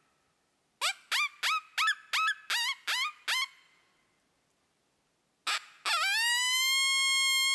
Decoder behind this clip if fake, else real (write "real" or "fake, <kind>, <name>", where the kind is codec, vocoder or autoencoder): real